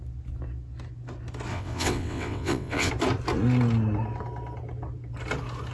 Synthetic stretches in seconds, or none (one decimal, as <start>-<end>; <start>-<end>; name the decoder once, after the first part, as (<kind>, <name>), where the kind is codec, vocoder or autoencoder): 1.5-2.9 (vocoder, WaveNeXt)